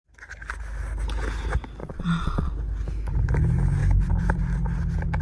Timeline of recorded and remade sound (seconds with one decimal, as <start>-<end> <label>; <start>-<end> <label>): 0.0-1.8 recorded; 1.8-2.5 remade; 2.5-5.2 recorded